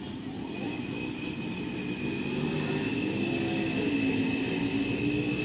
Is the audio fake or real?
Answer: real